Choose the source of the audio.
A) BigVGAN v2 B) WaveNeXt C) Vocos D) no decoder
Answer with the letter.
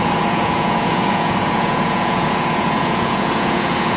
C